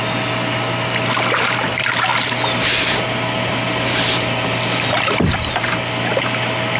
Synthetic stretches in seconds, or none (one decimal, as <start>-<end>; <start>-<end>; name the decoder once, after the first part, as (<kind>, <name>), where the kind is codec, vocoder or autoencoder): none